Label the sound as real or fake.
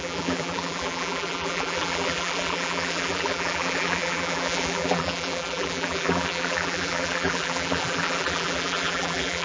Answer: fake